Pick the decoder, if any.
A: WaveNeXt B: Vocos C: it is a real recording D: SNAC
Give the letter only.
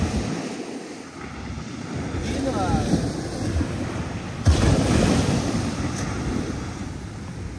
C